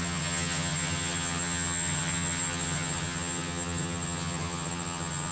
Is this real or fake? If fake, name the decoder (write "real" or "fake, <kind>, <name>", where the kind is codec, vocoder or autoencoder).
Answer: fake, vocoder, HiFi-GAN